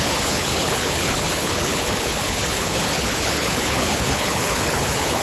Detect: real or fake fake